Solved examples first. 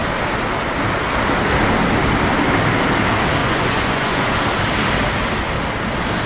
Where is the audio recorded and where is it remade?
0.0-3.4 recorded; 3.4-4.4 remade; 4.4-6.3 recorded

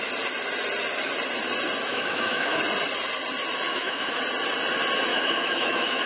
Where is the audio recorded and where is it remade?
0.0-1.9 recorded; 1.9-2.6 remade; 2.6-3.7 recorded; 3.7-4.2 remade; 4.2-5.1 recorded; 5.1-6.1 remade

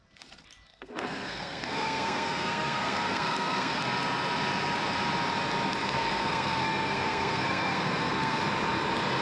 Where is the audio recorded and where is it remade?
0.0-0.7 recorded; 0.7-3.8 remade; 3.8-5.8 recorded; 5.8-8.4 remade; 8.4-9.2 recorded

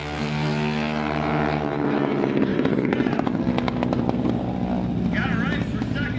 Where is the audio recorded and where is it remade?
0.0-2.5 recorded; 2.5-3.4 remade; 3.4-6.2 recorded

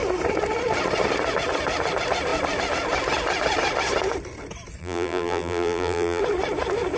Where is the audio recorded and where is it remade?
0.0-4.8 recorded; 4.8-6.2 remade; 6.2-7.0 recorded